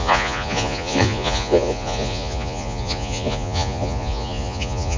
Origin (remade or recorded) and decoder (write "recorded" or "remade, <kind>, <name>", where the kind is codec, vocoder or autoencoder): remade, vocoder, Vocos